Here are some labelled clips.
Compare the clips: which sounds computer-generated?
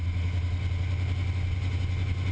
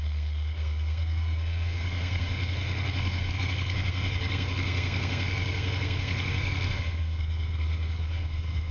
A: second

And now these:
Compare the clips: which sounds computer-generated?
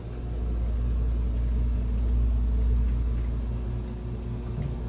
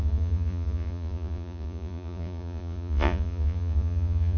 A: second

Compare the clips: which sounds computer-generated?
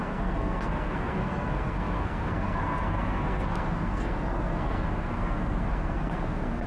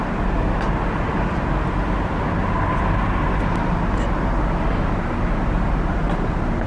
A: first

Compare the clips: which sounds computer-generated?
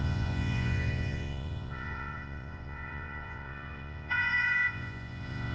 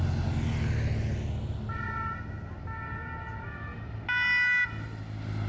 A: first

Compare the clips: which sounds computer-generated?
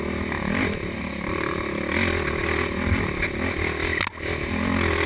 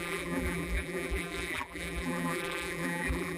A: second